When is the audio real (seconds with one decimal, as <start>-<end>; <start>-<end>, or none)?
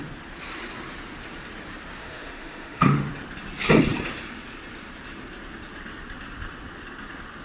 0.0-2.0; 3.1-7.4